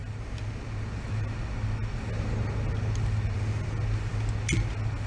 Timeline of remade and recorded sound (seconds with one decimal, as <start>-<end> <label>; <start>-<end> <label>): 0.0-5.1 recorded